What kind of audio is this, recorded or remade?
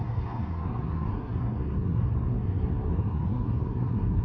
remade